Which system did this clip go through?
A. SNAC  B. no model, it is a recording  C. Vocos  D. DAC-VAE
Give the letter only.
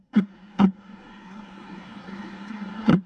A